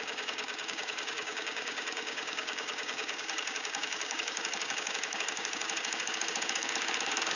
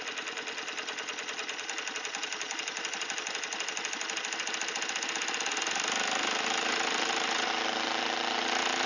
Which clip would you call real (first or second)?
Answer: second